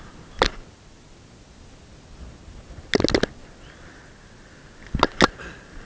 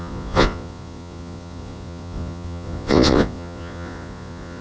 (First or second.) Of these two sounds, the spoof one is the second